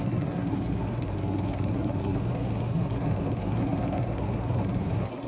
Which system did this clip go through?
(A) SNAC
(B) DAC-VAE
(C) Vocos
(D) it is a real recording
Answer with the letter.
A